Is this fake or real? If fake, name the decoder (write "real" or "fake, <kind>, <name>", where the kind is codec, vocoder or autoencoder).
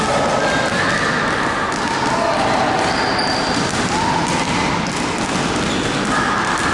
real